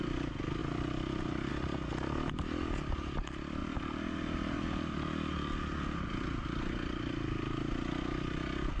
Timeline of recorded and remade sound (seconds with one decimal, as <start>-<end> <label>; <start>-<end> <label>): 0.0-0.6 recorded; 0.6-1.5 remade; 1.5-8.8 recorded